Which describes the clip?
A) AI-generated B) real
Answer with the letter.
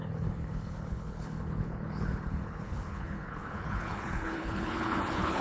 A